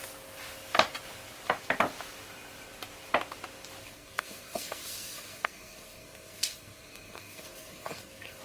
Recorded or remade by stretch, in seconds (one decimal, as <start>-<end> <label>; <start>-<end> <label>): 0.0-3.8 recorded; 3.8-8.4 remade